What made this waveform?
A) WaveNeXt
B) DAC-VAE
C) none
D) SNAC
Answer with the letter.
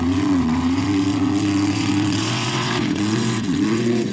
A